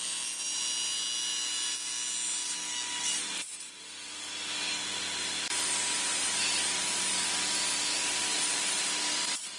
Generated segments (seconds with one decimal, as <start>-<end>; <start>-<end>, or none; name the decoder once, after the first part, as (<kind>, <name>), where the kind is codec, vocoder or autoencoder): none